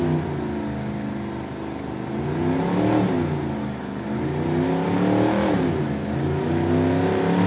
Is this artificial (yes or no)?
no